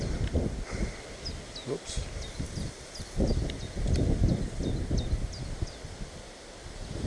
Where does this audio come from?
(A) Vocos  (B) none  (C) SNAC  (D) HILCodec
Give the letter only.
B